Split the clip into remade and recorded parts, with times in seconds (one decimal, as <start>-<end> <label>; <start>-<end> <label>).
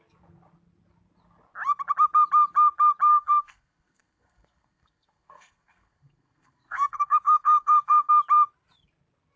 0.0-3.1 recorded; 3.1-8.1 remade; 8.1-9.4 recorded